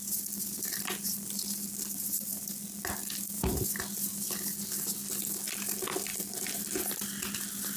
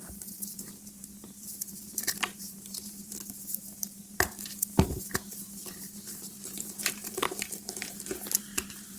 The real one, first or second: first